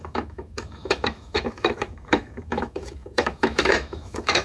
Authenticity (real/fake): fake